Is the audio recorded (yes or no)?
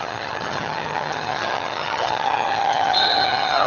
no